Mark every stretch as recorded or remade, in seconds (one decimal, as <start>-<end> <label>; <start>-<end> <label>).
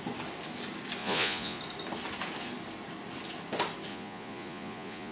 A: 0.0-1.0 recorded; 1.0-1.6 remade; 1.6-3.9 recorded; 3.9-5.1 remade